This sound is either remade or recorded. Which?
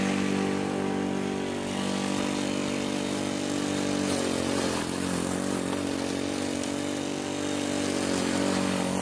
recorded